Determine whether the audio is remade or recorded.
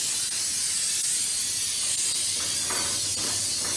recorded